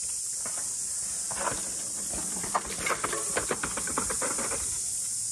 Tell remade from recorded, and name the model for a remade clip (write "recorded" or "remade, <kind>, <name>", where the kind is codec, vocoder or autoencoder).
recorded